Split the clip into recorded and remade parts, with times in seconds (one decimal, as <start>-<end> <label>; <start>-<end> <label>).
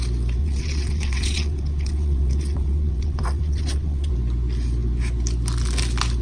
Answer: 0.0-0.4 recorded; 0.4-4.1 remade; 4.1-6.2 recorded